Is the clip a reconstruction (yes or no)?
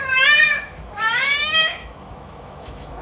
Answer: yes